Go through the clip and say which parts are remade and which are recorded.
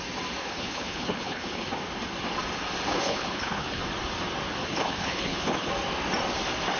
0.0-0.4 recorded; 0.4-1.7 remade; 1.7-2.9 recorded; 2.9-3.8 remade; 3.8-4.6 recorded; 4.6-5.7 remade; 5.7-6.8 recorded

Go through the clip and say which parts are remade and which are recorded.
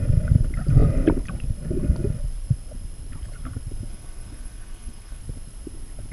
0.0-3.9 recorded; 3.9-5.2 remade; 5.2-6.1 recorded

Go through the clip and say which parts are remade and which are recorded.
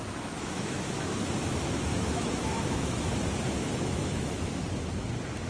0.0-1.2 remade; 1.2-1.9 recorded; 1.9-3.0 remade; 3.0-3.6 recorded; 3.6-4.6 remade; 4.6-5.5 recorded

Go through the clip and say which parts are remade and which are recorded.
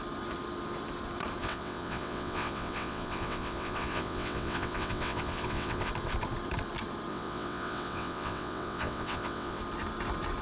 0.0-1.4 recorded; 1.4-5.9 remade; 5.9-7.1 recorded; 7.1-9.6 remade; 9.6-10.4 recorded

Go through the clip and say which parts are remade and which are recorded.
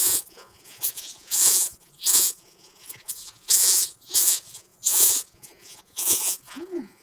0.0-7.0 remade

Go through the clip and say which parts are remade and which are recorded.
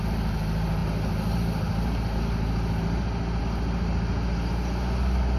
0.0-5.4 recorded